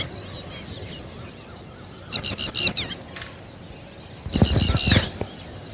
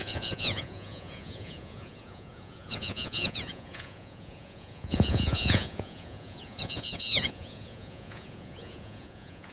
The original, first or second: first